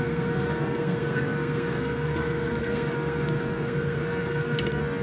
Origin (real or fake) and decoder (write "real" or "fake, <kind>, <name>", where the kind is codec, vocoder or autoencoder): fake, codec, SNAC